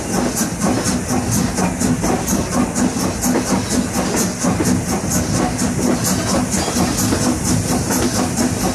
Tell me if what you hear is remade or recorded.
recorded